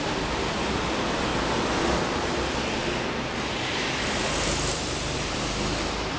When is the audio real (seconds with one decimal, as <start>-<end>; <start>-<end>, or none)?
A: 0.0-6.2